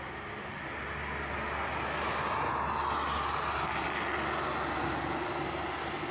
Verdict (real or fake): real